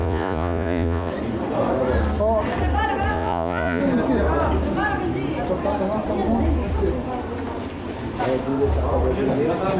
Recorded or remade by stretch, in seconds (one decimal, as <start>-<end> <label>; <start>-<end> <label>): 0.0-1.1 remade; 1.1-3.1 recorded; 3.1-3.8 remade; 3.8-9.8 recorded